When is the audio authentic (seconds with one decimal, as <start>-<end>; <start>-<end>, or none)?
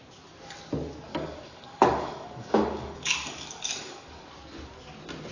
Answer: 0.0-1.1; 4.3-5.3